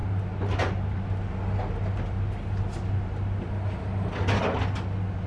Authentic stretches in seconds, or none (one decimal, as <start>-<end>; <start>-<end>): 0.0-5.3